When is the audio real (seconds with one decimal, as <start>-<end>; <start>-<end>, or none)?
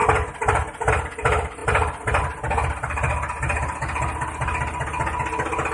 0.9-1.6; 2.2-5.7